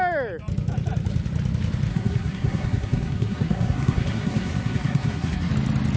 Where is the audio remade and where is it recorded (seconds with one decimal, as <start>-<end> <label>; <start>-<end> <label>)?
0.0-1.9 recorded; 1.9-5.5 remade; 5.5-6.0 recorded